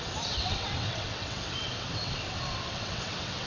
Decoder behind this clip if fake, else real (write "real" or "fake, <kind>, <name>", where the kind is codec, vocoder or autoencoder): fake, vocoder, WaveNeXt